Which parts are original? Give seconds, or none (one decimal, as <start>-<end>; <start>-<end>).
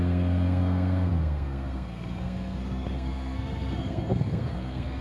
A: none